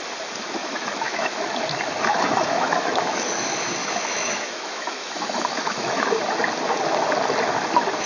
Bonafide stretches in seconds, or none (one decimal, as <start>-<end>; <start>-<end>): 0.0-0.6; 3.4-3.8; 6.2-8.1